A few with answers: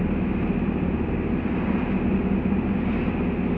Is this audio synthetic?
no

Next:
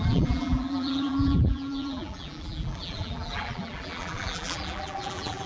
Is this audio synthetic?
yes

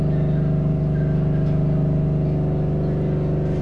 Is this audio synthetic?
no